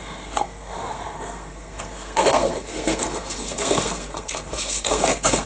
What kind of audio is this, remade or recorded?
remade